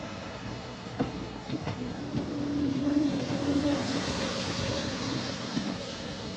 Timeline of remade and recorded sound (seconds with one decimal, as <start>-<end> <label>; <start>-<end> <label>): 0.0-2.0 remade; 2.0-2.6 recorded; 2.6-6.4 remade